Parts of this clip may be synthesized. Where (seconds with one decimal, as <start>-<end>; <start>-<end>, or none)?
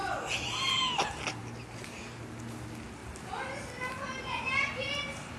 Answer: none